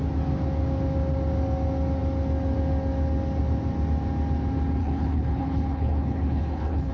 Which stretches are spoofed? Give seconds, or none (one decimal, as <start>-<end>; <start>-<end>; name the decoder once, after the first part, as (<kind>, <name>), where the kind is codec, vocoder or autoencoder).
4.8-6.9 (codec, HILCodec)